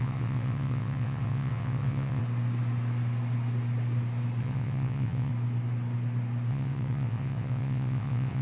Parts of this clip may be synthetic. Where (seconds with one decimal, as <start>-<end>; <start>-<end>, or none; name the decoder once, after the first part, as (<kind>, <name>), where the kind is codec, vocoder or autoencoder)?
0.0-2.2 (vocoder, WaveNeXt); 4.4-5.3; 6.5-8.4